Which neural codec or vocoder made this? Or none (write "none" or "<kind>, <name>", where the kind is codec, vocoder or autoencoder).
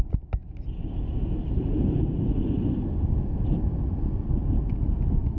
none